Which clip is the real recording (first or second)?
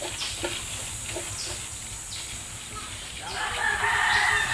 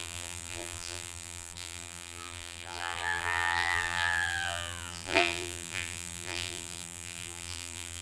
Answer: first